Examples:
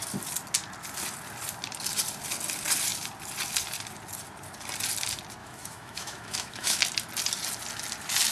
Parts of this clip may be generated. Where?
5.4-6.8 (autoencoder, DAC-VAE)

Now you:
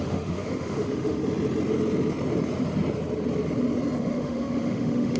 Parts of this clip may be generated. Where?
0.0-1.2 (autoencoder, DAC-VAE); 4.0-5.2

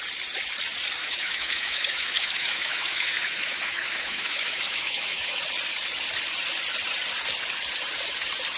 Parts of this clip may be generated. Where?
1.0-5.4 (autoencoder, DAC-VAE)